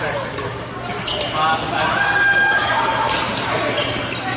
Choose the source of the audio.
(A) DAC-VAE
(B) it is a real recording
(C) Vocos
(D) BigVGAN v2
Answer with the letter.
B